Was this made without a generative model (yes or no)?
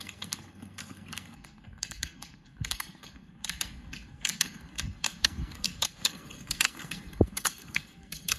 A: no